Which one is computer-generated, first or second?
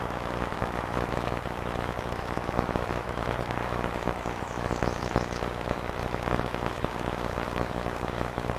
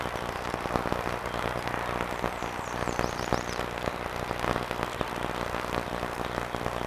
first